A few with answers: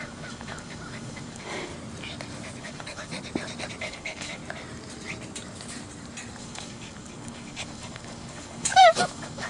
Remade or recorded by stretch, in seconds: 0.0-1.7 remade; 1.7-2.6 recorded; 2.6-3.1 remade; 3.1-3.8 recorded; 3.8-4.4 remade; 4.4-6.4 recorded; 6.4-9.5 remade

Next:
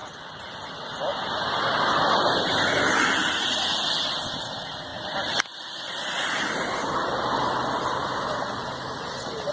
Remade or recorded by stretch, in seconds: 0.0-9.5 recorded

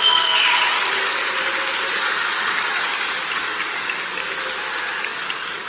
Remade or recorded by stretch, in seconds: 0.0-1.2 remade; 1.2-2.0 recorded; 2.0-4.2 remade; 4.2-5.0 recorded; 5.0-5.7 remade

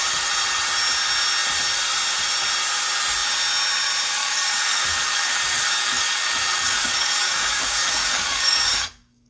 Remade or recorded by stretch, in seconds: 0.0-4.2 recorded; 4.2-9.3 remade

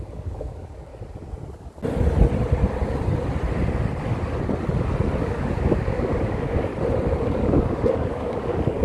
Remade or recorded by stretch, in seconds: 0.0-0.9 remade; 0.9-5.2 recorded; 5.2-6.7 remade; 6.7-7.2 recorded; 7.2-8.8 remade